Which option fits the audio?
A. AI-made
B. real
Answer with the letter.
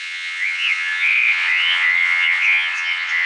A